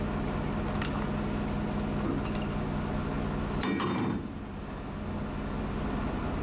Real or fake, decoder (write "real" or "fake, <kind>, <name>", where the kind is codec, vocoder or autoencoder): real